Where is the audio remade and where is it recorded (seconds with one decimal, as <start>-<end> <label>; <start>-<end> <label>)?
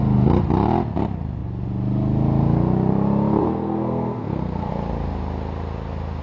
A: 0.0-3.4 recorded; 3.4-4.7 remade; 4.7-6.2 recorded